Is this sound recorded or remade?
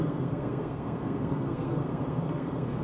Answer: remade